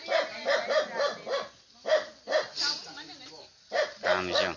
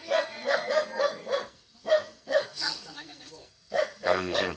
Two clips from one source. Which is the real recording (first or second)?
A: first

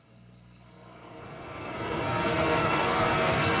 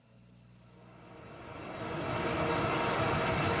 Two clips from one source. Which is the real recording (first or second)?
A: second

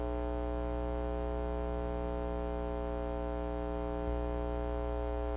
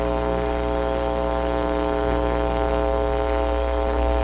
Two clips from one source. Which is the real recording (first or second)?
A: first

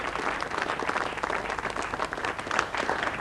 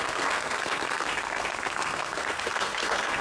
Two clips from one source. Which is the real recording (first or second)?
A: first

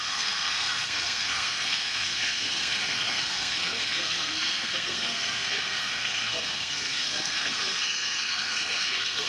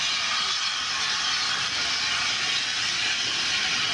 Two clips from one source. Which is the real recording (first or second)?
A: second